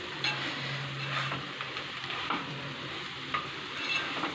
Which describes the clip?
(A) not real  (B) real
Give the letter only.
A